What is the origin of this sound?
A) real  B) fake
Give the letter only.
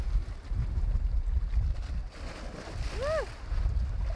A